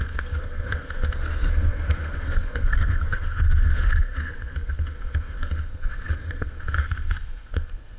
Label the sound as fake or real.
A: fake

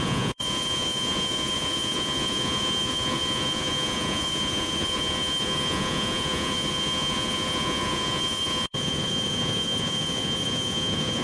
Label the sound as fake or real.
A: fake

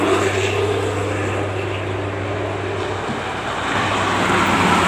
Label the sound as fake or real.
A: real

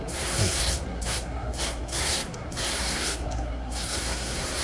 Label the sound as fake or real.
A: fake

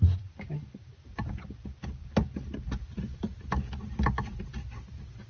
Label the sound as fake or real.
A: real